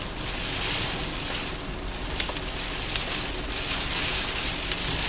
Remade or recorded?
recorded